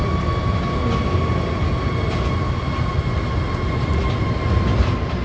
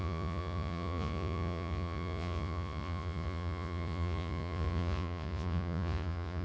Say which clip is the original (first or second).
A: first